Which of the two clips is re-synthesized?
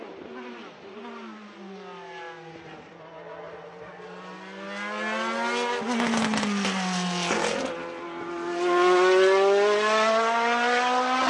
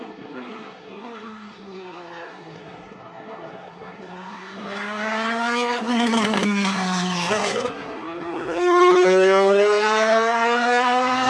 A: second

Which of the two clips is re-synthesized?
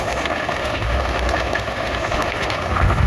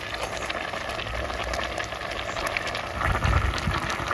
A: first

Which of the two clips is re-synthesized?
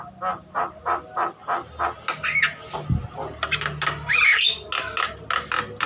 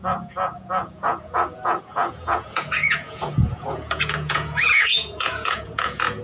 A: second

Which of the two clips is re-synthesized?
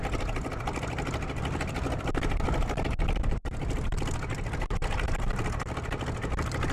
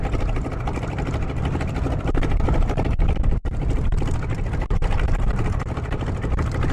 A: second